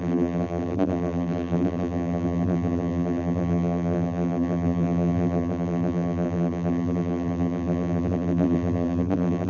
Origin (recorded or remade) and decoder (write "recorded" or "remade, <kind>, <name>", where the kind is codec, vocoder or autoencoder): remade, vocoder, BigVGAN v2